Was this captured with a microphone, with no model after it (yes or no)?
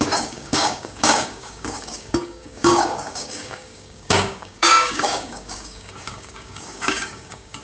no